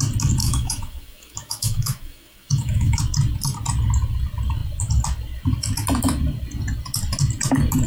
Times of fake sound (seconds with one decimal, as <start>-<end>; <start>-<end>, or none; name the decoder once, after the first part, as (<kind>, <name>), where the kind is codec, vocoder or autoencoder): 0.4-3.0 (autoencoder, DAC-VAE)